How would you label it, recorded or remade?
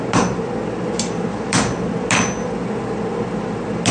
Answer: recorded